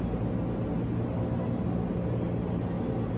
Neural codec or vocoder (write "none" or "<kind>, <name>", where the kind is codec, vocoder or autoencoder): none